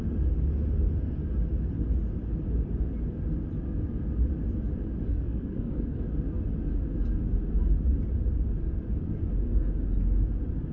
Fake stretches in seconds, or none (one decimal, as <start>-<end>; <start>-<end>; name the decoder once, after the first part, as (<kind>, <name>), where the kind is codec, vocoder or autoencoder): 5.1-6.1 (codec, SNAC)

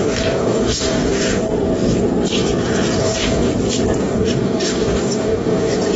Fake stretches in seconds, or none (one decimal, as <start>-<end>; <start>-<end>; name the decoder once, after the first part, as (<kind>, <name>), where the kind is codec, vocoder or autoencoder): 0.0-1.4 (codec, DAC); 3.0-3.5; 4.0-6.0

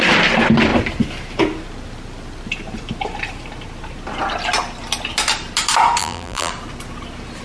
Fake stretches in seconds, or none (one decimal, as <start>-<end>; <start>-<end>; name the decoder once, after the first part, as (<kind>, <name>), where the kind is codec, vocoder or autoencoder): 6.0-6.5 (vocoder, BigVGAN v2)